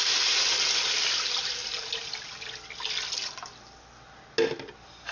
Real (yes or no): yes